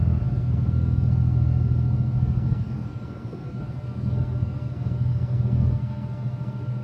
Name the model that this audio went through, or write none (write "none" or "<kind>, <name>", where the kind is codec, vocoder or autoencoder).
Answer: codec, SNAC